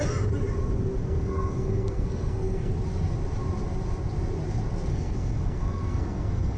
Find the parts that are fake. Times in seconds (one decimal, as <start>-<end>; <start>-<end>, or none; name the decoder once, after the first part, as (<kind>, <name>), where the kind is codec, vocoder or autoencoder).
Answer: 1.0-2.7 (codec, SNAC); 4.9-6.6